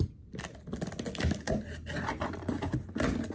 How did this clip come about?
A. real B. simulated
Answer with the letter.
A